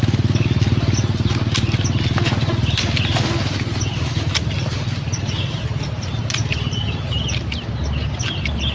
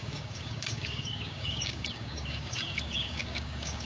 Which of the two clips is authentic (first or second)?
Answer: first